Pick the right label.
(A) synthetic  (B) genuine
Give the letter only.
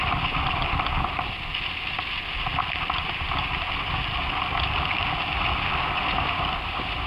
B